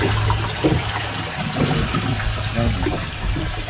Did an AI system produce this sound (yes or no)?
no